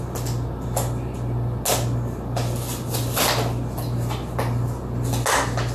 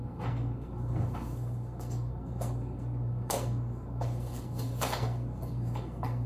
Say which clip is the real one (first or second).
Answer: first